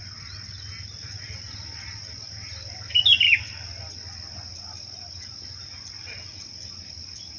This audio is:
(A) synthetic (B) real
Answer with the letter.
B